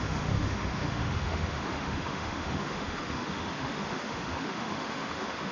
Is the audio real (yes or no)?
no